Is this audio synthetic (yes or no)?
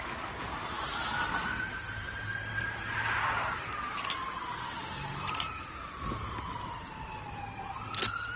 no